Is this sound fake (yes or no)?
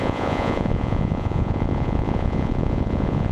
yes